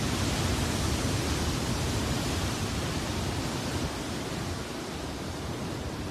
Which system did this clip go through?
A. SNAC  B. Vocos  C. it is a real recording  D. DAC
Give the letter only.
C